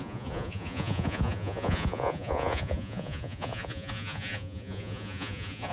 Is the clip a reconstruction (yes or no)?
yes